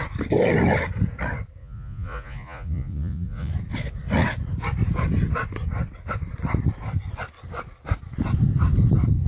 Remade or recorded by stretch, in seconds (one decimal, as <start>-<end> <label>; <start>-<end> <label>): 0.0-1.6 recorded; 1.6-3.5 remade; 3.5-9.3 recorded